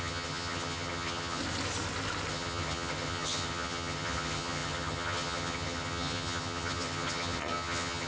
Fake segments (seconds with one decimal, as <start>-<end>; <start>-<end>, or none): 0.0-1.4; 2.3-8.1